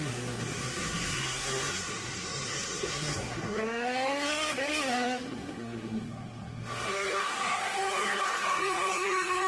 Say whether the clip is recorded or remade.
remade